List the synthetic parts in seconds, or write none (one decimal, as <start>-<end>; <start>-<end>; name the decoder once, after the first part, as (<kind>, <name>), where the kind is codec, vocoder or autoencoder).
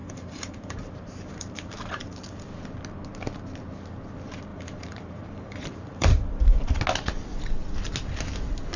0.0-2.5 (vocoder, BigVGAN v2); 4.5-6.8